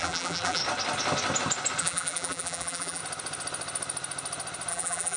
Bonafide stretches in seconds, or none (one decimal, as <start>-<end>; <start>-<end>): 0.6-1.8; 3.0-4.7

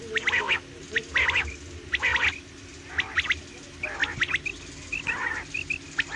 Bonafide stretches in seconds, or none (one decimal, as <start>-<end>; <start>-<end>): 0.0-6.2

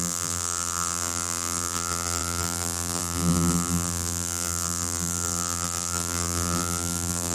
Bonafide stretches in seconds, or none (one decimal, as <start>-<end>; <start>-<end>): none

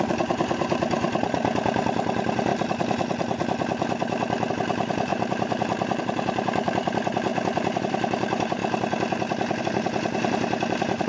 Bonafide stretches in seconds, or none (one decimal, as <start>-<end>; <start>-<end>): 2.5-4.5; 7.3-7.8; 8.6-9.6

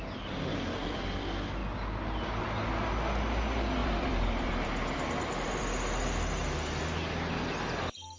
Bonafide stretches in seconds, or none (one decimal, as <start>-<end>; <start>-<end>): 0.0-0.5; 1.0-3.8; 5.6-8.2

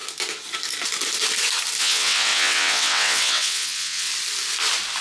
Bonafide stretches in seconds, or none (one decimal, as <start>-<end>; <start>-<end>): 0.0-1.8; 4.1-5.0

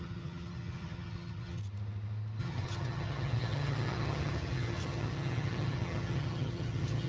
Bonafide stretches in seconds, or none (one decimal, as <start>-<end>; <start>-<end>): 1.6-2.4

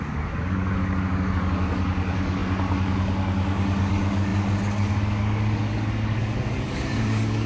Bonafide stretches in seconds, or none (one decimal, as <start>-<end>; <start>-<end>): none